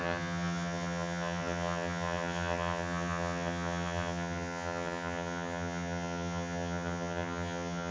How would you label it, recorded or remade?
remade